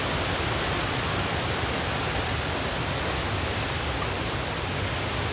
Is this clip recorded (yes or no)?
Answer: yes